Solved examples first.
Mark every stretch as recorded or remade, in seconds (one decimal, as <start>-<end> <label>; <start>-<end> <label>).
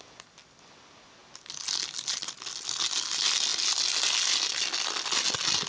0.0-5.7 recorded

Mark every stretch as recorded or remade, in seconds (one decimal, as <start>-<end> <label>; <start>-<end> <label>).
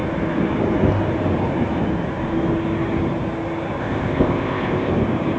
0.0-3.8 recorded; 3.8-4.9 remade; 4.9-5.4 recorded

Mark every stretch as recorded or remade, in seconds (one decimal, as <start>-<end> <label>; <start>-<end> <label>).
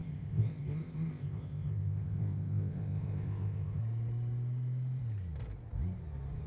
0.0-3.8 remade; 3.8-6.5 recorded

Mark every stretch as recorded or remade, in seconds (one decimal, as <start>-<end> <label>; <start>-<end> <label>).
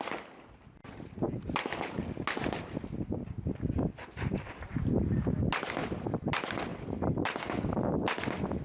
0.0-8.6 recorded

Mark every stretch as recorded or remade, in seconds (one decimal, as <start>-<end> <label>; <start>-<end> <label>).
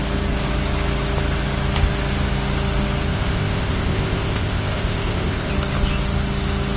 0.0-3.1 recorded; 3.1-5.5 remade; 5.5-6.8 recorded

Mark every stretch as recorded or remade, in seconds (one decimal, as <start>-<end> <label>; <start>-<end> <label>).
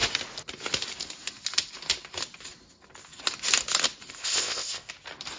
0.0-4.1 recorded; 4.1-4.9 remade; 4.9-5.4 recorded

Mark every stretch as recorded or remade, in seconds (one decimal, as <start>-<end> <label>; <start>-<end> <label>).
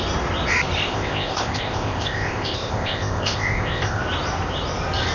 0.0-0.9 recorded; 0.9-4.0 remade; 4.0-5.1 recorded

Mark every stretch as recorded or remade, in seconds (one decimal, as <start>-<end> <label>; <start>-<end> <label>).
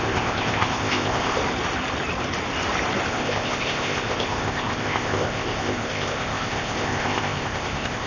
0.0-1.4 remade; 1.4-3.1 recorded; 3.1-8.1 remade